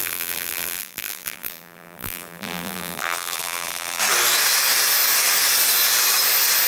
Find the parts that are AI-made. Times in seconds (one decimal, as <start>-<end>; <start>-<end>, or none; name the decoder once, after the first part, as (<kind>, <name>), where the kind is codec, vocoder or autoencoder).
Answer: 0.0-4.0 (vocoder, BigVGAN v2)